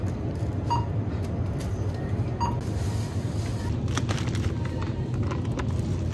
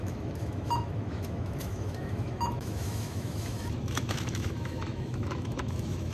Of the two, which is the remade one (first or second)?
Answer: second